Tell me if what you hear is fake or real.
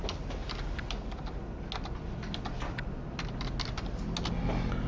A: real